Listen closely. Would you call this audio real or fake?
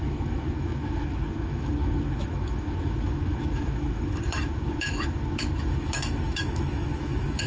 fake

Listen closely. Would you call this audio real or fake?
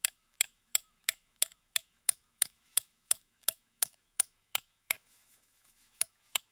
fake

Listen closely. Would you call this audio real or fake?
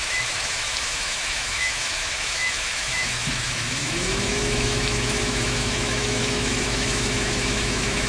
fake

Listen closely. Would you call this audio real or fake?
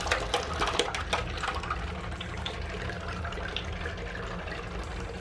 real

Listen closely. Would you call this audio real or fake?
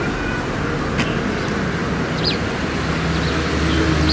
real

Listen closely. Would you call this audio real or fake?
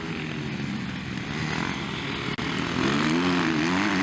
real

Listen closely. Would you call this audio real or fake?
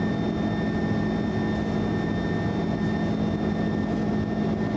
real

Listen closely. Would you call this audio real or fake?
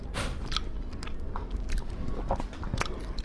real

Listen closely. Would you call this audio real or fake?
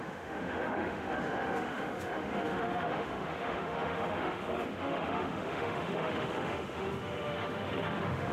fake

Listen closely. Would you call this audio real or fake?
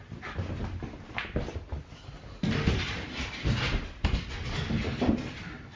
real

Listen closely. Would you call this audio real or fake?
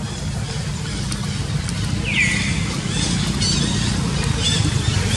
real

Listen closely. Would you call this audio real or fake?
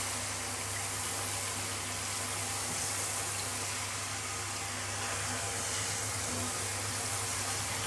real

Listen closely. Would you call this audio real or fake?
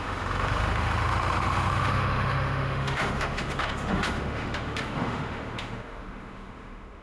fake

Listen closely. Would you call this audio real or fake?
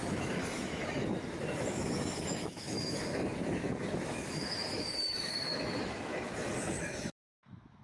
fake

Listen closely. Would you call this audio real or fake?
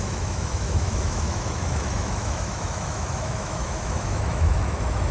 fake